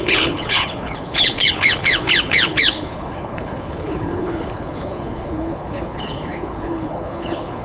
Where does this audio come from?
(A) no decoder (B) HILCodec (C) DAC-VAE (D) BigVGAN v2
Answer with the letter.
B